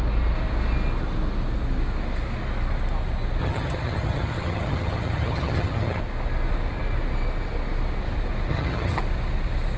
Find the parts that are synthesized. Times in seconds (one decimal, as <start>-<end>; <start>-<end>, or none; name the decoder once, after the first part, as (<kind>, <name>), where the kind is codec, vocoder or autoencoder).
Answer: 3.4-6.0 (vocoder, HiFi-GAN); 8.5-9.0